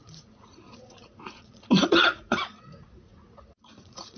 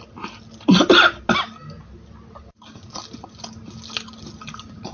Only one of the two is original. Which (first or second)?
second